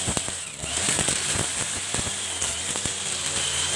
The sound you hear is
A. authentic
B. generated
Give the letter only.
A